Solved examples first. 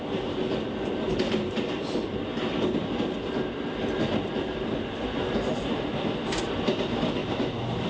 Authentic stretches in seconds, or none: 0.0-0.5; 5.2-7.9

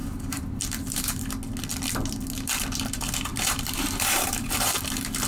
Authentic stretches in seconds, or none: 1.2-3.3; 4.8-5.3

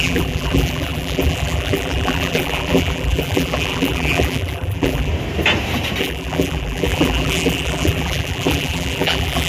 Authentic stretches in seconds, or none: 5.1-6.0